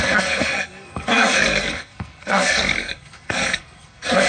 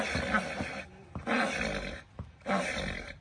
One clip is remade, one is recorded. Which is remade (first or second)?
first